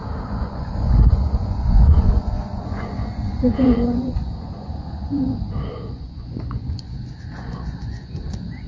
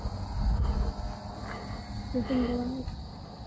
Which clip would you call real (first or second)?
second